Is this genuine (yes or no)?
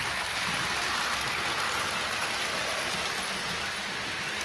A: yes